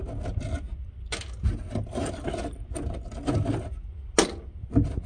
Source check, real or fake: real